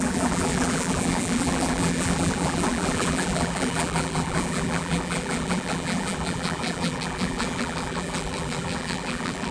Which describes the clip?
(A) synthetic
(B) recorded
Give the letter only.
A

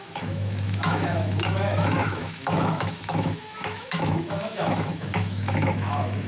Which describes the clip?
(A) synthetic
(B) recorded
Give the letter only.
A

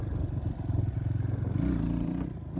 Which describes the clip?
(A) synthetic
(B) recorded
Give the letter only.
B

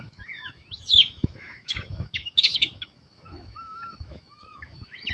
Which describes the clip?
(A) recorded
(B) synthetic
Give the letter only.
B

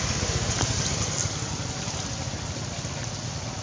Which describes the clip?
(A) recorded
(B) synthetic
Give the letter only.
A